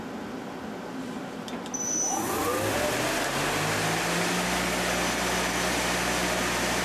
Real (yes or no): yes